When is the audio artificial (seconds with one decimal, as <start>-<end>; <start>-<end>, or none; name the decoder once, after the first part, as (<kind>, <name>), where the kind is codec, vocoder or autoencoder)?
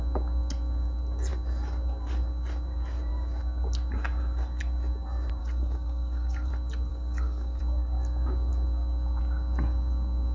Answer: 5.4-6.5 (codec, DAC); 6.9-7.6